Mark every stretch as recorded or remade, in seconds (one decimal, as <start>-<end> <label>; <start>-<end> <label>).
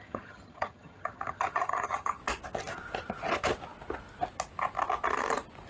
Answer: 0.0-2.2 remade; 2.2-5.7 recorded